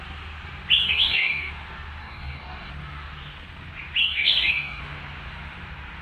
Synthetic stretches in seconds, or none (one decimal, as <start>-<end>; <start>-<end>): 0.8-1.5; 2.0-2.7; 4.0-4.8